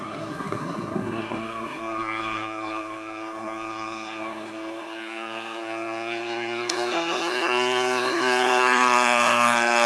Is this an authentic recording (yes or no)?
no